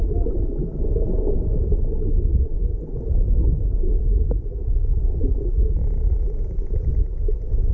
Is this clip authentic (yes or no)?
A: yes